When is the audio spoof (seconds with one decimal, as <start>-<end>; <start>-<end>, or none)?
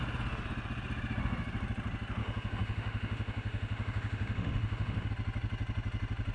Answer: 2.2-5.1